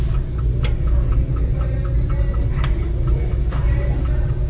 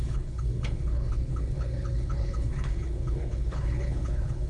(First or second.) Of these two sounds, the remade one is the second